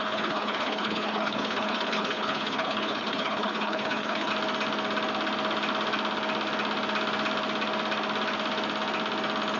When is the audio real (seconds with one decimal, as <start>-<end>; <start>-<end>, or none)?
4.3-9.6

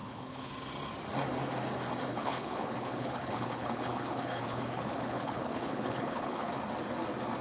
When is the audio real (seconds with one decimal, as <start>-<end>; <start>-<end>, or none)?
0.5-2.1; 6.5-7.4

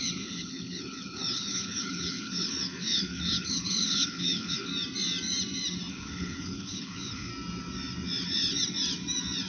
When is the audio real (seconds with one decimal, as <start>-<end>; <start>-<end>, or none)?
4.7-5.9; 7.3-9.5

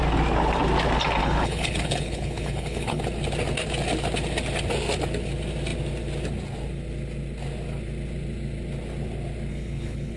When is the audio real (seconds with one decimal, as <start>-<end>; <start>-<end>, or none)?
0.0-1.2; 3.0-9.5

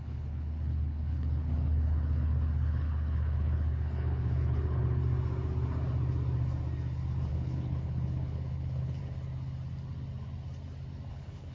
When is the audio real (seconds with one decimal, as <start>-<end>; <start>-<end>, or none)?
5.0-7.3; 9.0-11.1

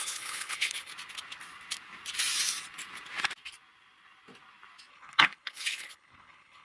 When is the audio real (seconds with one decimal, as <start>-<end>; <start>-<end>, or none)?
0.9-4.9

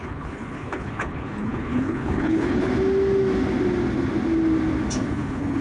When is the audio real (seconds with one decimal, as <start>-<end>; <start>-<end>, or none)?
2.7-5.1

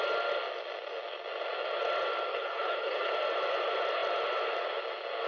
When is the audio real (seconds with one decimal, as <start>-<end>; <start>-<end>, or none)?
0.0-2.3; 3.1-5.3